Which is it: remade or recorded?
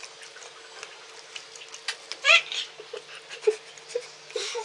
recorded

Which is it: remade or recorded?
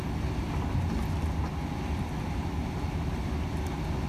recorded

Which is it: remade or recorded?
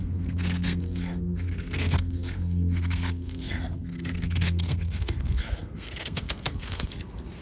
remade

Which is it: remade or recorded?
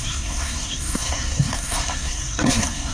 remade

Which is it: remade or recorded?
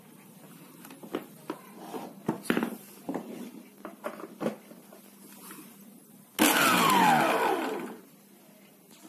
recorded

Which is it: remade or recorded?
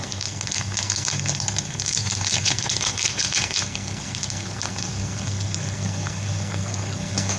remade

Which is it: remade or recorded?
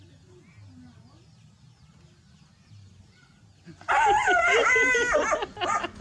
recorded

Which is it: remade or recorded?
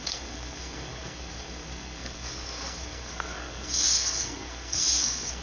remade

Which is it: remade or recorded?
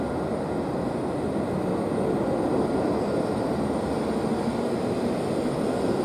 recorded